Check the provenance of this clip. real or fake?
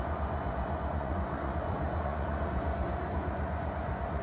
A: fake